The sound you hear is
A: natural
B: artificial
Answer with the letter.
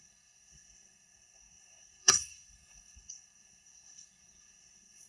B